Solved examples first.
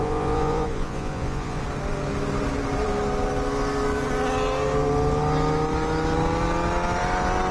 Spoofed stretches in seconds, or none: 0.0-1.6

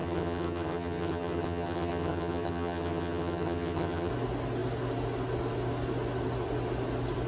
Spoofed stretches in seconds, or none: 0.0-4.1

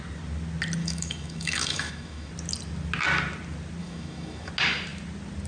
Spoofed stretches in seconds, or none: 0.8-2.3; 3.8-4.5

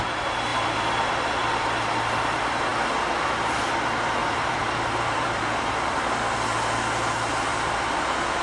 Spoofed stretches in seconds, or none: 0.5-1.1; 4.2-6.0